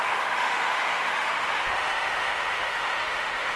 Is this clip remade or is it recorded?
remade